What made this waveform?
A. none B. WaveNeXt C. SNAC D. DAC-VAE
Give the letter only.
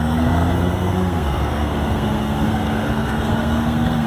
C